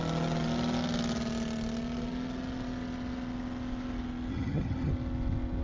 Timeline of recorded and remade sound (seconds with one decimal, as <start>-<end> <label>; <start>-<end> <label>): 0.0-4.3 recorded; 4.3-4.9 remade; 4.9-5.6 recorded